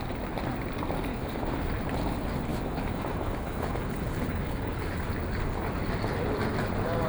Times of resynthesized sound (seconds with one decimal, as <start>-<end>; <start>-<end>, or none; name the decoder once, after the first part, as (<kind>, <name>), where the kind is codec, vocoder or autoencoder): 1.1-1.6 (autoencoder, DAC-VAE); 2.5-4.8